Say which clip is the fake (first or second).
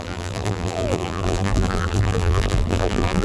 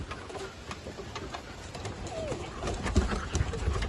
first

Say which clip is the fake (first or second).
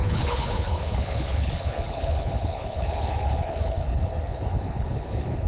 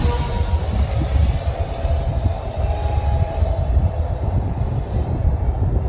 first